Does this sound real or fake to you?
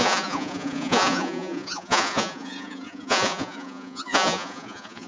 fake